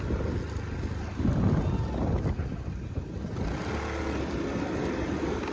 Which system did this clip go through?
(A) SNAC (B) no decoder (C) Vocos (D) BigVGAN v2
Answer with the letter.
B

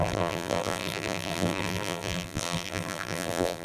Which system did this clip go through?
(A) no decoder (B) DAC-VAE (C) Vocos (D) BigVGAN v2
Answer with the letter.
D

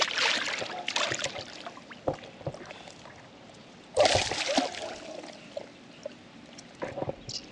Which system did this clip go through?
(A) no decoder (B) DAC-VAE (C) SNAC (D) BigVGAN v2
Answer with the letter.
A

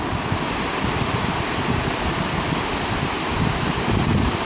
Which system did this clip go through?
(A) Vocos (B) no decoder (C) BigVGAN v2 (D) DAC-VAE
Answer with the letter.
C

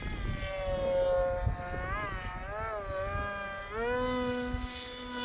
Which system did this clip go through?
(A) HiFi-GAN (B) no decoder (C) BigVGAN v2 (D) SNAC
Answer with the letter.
B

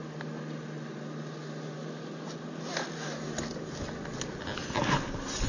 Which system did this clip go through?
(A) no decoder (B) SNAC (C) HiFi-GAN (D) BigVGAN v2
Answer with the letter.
A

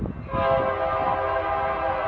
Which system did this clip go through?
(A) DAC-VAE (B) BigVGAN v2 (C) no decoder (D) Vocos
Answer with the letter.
C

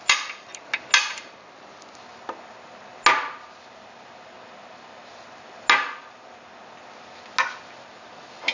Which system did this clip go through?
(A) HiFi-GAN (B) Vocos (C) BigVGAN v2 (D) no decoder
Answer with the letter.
D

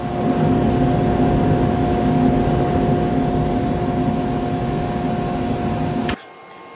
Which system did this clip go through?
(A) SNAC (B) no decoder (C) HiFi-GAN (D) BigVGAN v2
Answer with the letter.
B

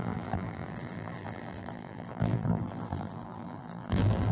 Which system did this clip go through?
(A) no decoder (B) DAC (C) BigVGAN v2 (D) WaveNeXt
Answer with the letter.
C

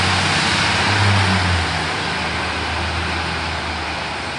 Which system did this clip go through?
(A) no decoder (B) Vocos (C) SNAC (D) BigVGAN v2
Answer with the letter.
A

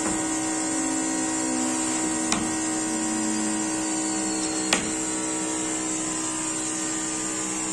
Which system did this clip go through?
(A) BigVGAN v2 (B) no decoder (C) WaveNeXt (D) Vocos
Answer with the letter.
B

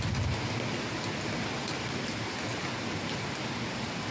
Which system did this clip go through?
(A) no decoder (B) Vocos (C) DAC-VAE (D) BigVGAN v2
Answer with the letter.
D